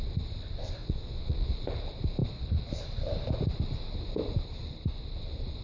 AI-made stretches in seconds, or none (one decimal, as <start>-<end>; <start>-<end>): 0.8-1.5